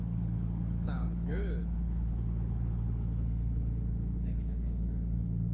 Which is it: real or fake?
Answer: fake